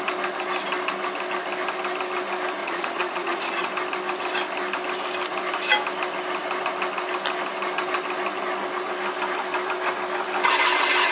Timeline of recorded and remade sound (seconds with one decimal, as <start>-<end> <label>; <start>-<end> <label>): 0.0-2.6 recorded; 2.6-3.7 remade; 3.7-11.1 recorded